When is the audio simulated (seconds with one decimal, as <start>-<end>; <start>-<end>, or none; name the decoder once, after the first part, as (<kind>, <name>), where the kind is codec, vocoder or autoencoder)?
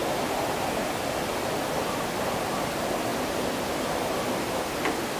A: none